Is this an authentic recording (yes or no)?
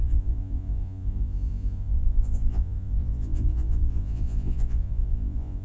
no